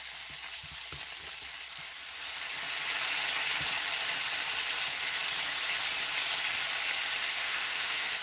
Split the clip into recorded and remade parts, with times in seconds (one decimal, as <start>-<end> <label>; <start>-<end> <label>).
0.0-7.2 recorded; 7.2-8.2 remade